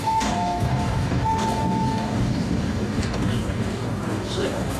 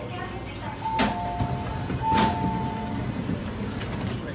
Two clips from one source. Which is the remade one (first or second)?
first